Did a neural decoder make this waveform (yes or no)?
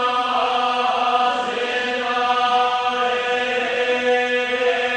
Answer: no